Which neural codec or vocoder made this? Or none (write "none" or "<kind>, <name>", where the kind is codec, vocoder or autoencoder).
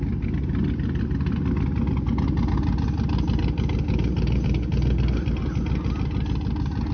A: none